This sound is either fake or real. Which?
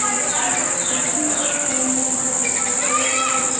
real